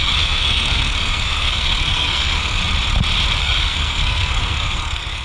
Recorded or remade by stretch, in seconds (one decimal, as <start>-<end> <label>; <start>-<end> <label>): 0.0-2.6 remade; 2.6-3.4 recorded; 3.4-5.2 remade